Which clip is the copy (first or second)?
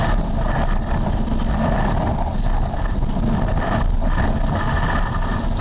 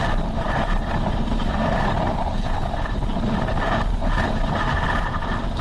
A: second